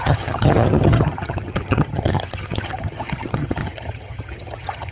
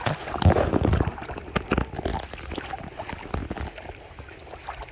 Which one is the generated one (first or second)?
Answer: first